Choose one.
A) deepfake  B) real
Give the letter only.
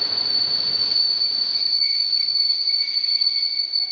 A